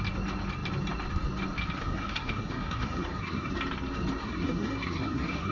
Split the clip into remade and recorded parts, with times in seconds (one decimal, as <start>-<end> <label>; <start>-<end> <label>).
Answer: 0.0-1.8 recorded; 1.8-3.5 remade; 3.5-4.2 recorded; 4.2-5.5 remade